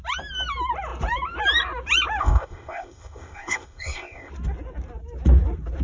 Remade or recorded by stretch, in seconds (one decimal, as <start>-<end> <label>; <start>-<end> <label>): 0.0-2.2 recorded; 2.2-4.3 remade; 4.3-5.8 recorded